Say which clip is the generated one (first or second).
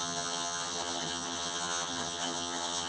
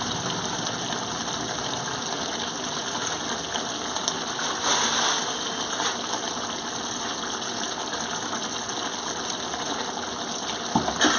first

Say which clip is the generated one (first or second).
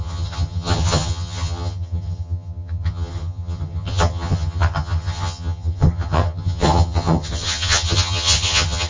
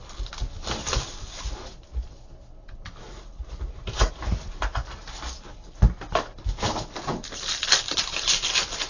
first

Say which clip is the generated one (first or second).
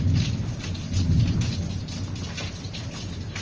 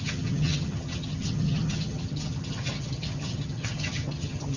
second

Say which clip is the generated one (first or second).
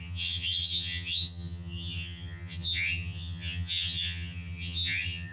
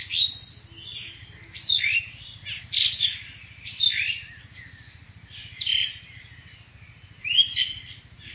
first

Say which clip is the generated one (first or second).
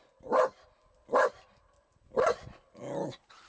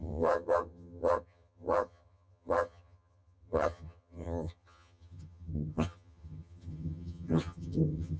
second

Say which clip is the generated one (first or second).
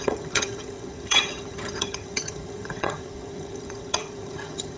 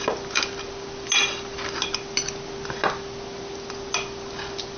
first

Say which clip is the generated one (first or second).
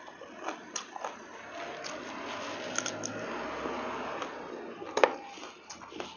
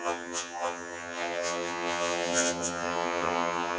second